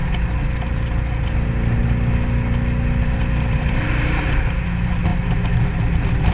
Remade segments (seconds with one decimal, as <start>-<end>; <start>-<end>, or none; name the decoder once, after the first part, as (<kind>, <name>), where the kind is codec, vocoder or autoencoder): none